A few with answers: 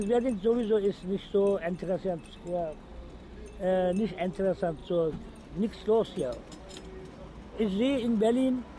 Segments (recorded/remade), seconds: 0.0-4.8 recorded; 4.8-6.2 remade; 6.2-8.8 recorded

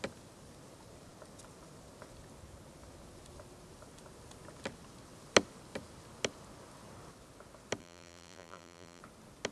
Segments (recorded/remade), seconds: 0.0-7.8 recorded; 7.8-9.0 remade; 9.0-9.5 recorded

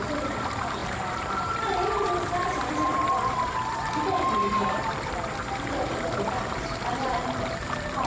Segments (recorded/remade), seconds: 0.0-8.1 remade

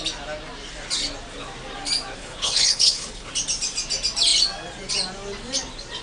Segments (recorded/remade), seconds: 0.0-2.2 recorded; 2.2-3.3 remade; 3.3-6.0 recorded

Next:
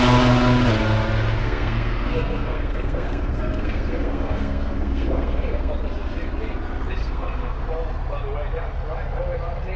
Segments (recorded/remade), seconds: 0.0-1.4 recorded; 1.4-5.7 remade; 5.7-7.0 recorded; 7.0-7.6 remade; 7.6-9.8 recorded

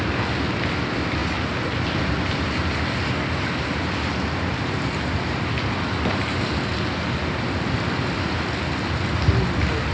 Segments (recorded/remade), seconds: 0.0-9.9 recorded